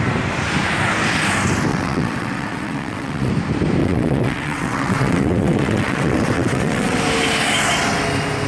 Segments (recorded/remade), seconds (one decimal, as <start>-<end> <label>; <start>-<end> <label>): 0.0-1.7 recorded; 1.7-3.3 remade; 3.3-3.8 recorded; 3.8-7.0 remade; 7.0-8.5 recorded